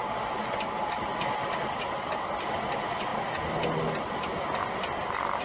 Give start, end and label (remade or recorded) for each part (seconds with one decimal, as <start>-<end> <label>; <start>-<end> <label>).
0.0-5.4 recorded